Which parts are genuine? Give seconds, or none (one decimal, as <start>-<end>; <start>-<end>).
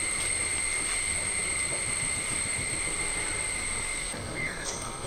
0.0-4.0